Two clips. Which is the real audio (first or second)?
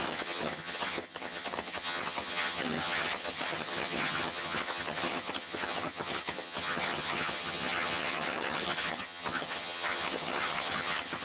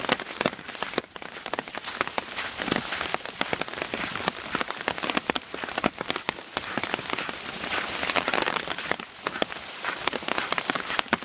second